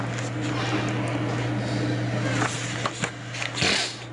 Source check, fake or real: real